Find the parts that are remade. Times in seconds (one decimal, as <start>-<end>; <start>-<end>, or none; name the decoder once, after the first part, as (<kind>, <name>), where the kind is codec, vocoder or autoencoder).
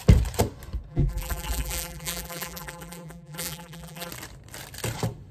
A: 0.9-4.1 (vocoder, BigVGAN v2)